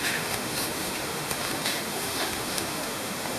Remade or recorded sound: remade